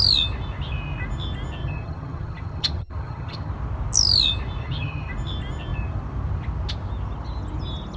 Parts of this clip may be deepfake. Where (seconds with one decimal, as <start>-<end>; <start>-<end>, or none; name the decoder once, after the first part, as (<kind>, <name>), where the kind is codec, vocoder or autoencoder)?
1.6-3.5 (vocoder, HiFi-GAN); 4.6-5.1